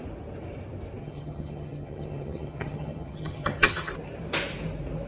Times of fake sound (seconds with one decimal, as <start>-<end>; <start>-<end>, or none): 1.0-3.9